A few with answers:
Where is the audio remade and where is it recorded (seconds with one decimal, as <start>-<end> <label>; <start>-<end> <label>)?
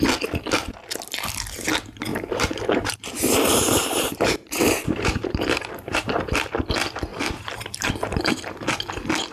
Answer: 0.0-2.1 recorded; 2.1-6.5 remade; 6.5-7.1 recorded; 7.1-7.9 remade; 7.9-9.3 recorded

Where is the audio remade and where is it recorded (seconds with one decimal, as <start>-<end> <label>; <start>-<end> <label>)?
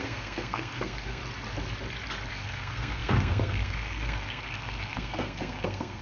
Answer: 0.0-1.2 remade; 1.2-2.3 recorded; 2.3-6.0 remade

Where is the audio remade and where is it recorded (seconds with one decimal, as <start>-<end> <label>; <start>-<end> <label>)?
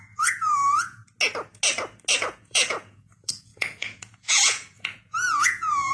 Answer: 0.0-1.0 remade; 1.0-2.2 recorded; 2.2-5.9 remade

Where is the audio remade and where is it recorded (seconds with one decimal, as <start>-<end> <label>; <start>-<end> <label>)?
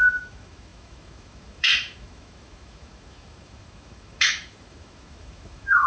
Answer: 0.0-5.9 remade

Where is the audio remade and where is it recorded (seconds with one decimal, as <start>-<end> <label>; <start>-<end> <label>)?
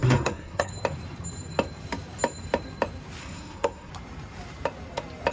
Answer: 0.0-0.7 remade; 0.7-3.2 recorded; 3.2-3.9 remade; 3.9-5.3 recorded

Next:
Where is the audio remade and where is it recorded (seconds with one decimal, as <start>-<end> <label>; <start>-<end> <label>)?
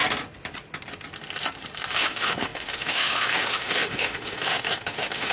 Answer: 0.0-1.9 recorded; 1.9-5.3 remade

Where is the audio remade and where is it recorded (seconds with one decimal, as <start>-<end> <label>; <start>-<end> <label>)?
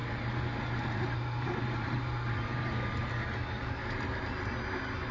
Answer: 0.0-3.1 remade; 3.1-3.8 recorded; 3.8-4.5 remade; 4.5-5.1 recorded